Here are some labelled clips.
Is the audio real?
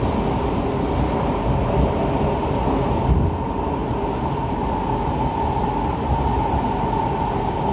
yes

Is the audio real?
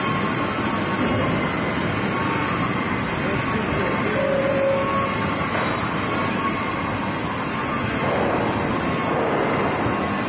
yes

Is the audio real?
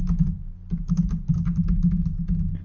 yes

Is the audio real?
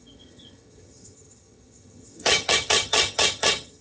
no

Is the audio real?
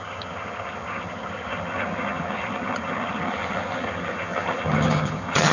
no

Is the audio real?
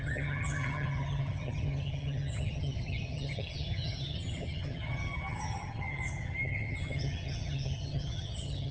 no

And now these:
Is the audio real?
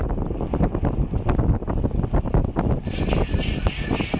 yes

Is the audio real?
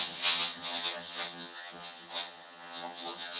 no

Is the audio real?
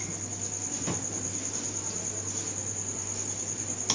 yes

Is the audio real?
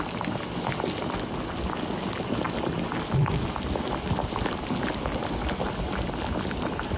yes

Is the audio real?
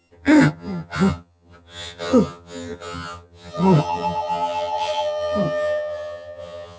no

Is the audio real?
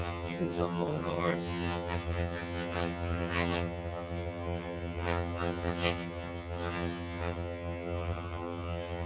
no